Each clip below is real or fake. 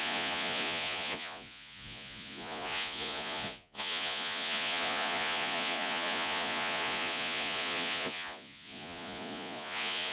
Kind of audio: fake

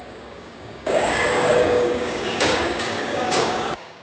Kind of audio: fake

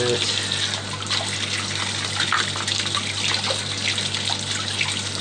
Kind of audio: real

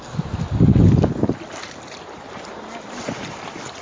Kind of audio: real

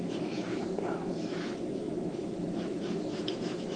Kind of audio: fake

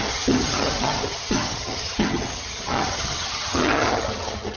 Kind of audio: fake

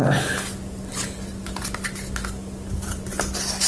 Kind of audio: real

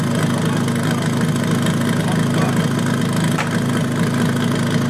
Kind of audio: real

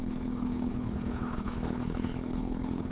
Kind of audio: fake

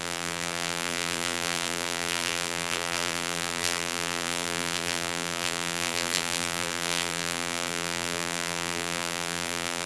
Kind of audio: fake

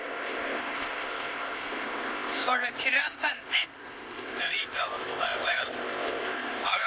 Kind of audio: fake